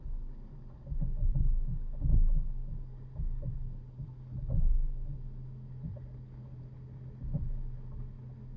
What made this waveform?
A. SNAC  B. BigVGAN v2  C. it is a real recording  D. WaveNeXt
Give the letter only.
C